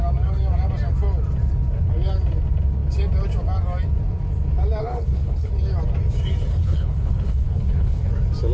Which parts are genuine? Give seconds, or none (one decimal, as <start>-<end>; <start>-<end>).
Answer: 0.0-4.8; 5.5-6.5; 8.1-8.5